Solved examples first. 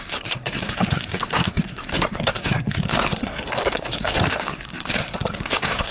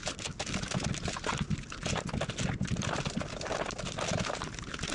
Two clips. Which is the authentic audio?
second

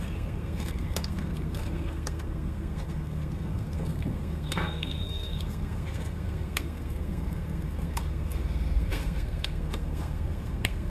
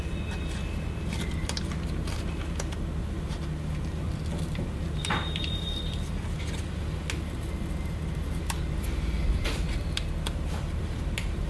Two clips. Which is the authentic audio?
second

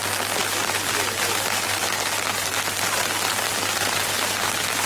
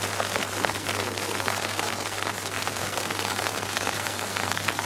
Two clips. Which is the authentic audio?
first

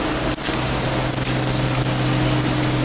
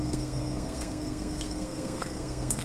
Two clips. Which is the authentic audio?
first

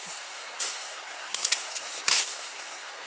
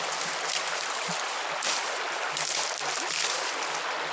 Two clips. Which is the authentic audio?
second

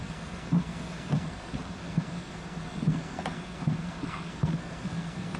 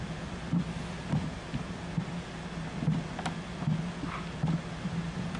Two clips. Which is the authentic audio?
second